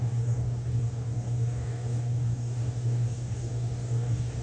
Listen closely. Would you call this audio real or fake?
fake